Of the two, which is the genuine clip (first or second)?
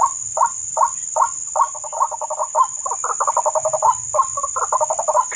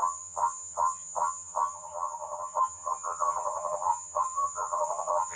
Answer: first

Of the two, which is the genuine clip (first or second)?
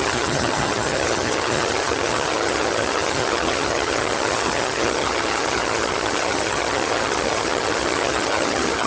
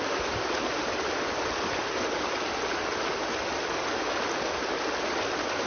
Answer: second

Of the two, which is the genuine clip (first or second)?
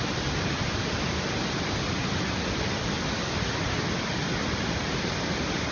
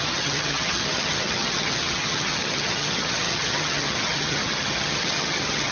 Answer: first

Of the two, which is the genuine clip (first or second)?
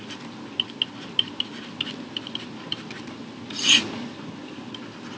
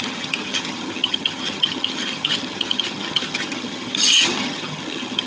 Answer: first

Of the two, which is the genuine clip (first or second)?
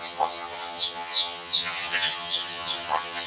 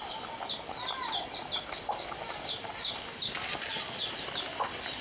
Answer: second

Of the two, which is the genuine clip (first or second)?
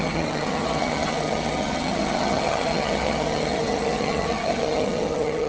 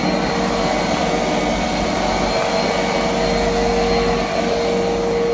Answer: second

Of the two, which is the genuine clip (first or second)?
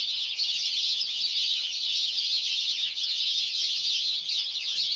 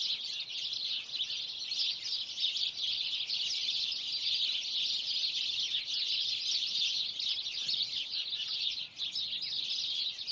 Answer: second